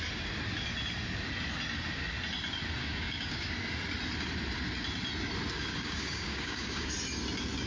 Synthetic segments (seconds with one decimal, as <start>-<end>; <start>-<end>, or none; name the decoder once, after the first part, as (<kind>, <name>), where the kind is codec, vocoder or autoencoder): 2.8-3.5 (codec, DAC); 5.7-6.9